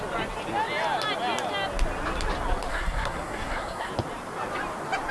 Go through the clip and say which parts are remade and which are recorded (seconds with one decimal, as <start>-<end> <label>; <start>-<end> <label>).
0.0-2.7 recorded; 2.7-3.9 remade; 3.9-5.1 recorded